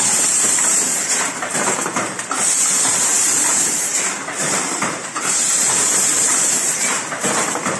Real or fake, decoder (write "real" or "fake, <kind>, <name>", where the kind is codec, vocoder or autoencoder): fake, vocoder, BigVGAN v2